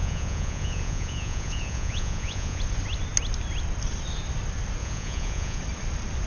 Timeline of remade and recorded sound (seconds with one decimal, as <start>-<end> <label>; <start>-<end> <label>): 0.0-2.6 remade; 2.6-4.8 recorded; 4.8-5.6 remade; 5.6-6.3 recorded

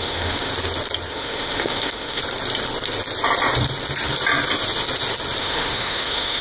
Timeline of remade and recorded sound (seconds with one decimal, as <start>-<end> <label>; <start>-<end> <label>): 0.0-0.5 remade; 0.5-1.1 recorded; 1.1-2.2 remade; 2.2-5.4 recorded; 5.4-6.4 remade

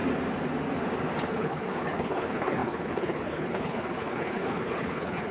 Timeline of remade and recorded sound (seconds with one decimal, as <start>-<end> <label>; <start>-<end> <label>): 0.0-1.3 recorded; 1.3-5.3 remade

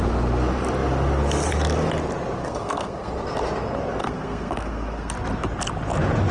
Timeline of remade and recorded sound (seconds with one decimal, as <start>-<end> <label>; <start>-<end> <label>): 0.0-2.4 recorded; 2.4-3.1 remade; 3.1-4.0 recorded; 4.0-5.1 remade; 5.1-6.3 recorded

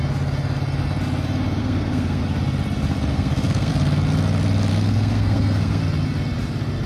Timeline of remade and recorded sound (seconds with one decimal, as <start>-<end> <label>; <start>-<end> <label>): 0.0-1.6 recorded; 1.6-2.2 remade; 2.2-3.1 recorded; 3.1-3.7 remade; 3.7-4.7 recorded; 4.7-5.8 remade; 5.8-6.9 recorded

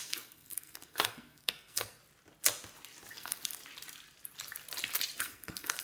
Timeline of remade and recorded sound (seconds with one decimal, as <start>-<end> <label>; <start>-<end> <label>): 0.0-2.0 remade; 2.0-3.1 recorded; 3.1-3.6 remade; 3.6-5.2 recorded; 5.2-5.8 remade

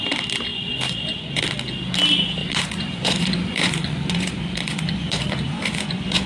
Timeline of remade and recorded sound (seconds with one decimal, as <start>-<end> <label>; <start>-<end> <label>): 0.0-0.5 recorded; 0.5-1.4 remade; 1.4-2.4 recorded; 2.4-6.3 remade

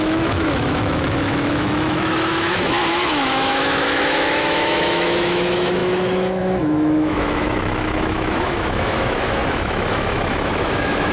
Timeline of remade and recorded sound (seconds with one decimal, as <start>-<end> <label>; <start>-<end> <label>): 0.0-11.1 remade